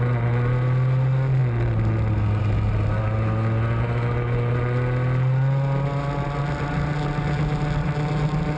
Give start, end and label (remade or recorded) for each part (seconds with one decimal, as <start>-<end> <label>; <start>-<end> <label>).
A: 0.0-8.6 recorded